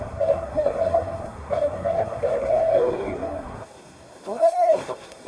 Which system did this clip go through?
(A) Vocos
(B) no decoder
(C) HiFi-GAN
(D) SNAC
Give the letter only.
D